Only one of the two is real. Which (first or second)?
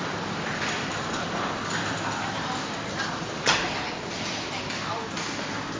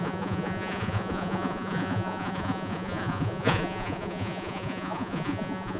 first